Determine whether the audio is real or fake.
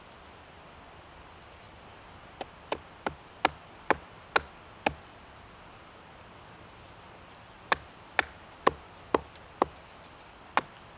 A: real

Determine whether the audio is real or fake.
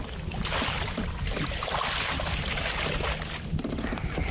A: real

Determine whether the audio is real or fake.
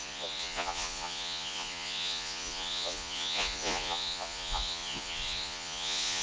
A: fake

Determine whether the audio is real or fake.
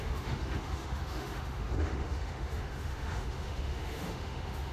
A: fake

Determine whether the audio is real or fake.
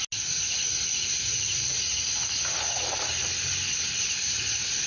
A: real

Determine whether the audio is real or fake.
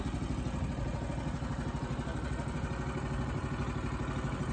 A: real